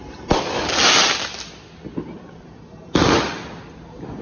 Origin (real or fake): real